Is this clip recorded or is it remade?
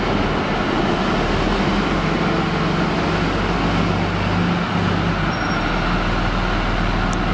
recorded